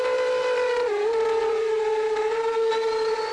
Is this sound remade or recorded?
remade